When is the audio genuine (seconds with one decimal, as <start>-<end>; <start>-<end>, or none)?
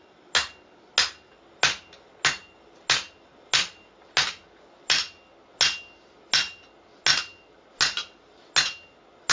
0.0-9.3